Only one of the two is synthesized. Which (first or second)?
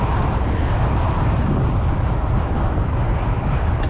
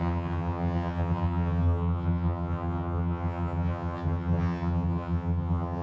second